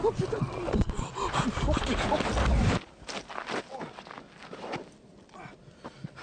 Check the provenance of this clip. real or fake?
real